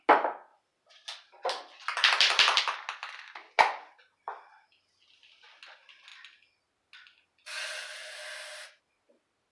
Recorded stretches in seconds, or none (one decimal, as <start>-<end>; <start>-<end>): 0.0-0.5; 2.6-9.5